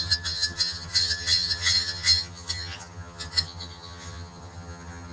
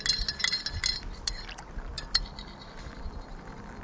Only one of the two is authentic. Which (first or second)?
second